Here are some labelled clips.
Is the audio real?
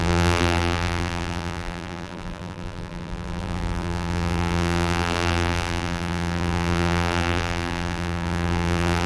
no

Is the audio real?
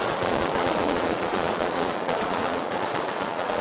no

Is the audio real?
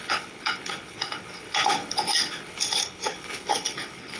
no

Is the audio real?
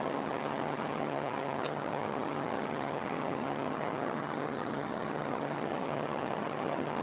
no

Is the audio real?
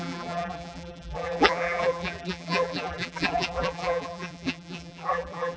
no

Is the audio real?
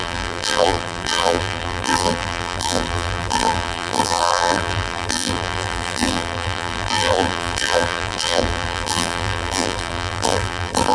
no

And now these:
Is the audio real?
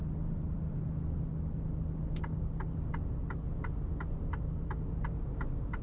yes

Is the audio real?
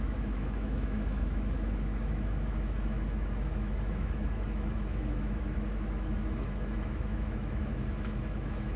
no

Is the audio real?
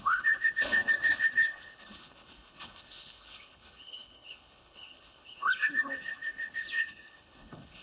no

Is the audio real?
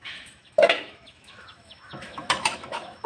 no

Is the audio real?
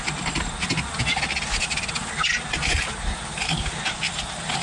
yes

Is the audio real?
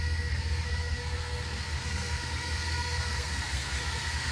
no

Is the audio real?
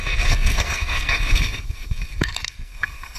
no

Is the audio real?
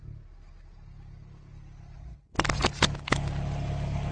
yes